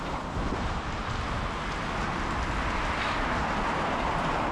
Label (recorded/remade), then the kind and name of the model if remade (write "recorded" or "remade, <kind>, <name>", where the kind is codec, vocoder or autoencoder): recorded